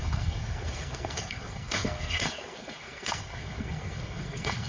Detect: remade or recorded remade